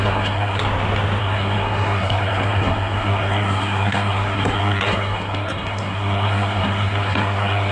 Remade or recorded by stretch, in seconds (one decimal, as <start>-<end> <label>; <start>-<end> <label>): 0.0-0.6 remade; 0.6-1.2 recorded; 1.2-7.7 remade